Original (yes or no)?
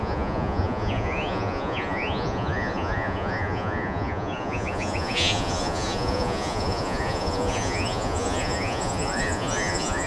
no